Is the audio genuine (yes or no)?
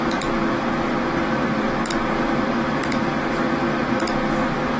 yes